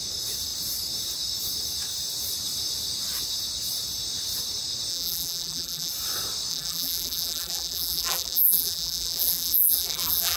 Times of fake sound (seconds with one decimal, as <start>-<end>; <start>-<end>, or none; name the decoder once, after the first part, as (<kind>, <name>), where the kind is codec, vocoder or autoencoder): 4.9-5.9 (vocoder, BigVGAN v2); 6.5-10.4